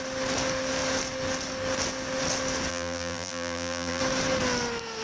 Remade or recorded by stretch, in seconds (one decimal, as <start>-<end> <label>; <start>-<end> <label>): 0.0-2.7 recorded; 2.7-4.0 remade; 4.0-5.0 recorded